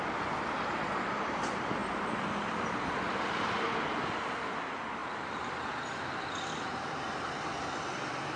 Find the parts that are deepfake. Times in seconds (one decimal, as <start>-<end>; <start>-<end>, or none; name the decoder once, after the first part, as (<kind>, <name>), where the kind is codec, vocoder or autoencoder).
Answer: 1.8-4.5 (vocoder, BigVGAN v2); 5.0-7.7